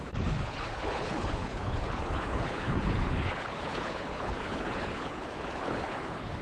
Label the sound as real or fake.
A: fake